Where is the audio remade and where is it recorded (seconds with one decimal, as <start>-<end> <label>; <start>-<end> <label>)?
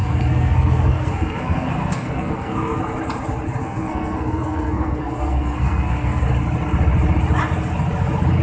0.0-2.8 remade; 2.8-3.6 recorded; 3.6-6.2 remade; 6.2-8.4 recorded